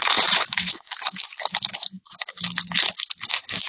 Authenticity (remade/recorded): remade